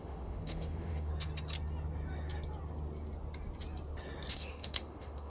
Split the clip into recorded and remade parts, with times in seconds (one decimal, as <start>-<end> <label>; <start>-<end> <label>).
0.0-1.1 remade; 1.1-4.3 recorded; 4.3-5.3 remade